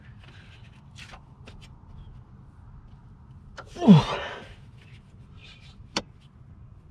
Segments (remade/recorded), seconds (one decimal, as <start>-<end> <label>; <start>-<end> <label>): 0.0-5.4 recorded; 5.4-6.0 remade; 6.0-6.9 recorded